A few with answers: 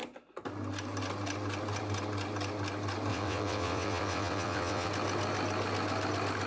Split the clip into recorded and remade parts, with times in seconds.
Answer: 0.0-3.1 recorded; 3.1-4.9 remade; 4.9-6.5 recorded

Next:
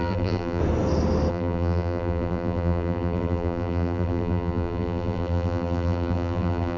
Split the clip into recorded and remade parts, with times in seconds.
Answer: 0.0-0.6 remade; 0.6-1.3 recorded; 1.3-6.8 remade

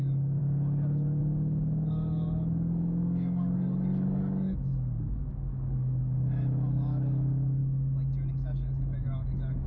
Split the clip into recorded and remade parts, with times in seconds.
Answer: 0.0-0.4 remade; 0.4-1.2 recorded; 1.2-7.6 remade; 7.6-8.3 recorded; 8.3-9.7 remade

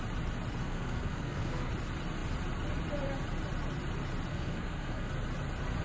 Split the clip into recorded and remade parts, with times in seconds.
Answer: 0.0-0.6 recorded; 0.6-1.7 remade; 1.7-4.3 recorded; 4.3-5.1 remade; 5.1-5.8 recorded

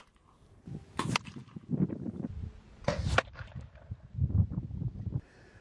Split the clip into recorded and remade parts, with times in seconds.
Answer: 0.0-5.6 recorded